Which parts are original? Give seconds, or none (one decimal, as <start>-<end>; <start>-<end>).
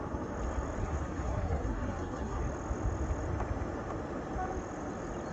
0.0-0.8; 2.4-5.3